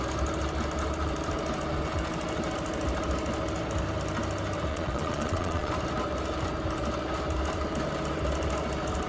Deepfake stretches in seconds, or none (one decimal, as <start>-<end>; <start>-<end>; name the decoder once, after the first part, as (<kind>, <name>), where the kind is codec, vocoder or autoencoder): 4.7-5.7 (vocoder, Vocos)